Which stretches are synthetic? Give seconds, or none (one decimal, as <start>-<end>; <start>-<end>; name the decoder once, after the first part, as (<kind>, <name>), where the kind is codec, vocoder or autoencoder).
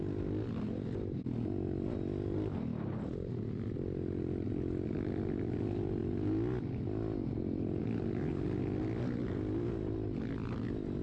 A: none